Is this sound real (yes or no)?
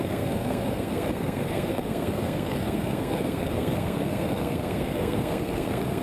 no